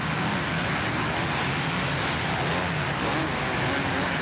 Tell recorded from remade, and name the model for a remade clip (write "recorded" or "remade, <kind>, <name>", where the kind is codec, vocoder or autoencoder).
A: recorded